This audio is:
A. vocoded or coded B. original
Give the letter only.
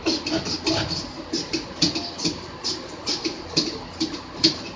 B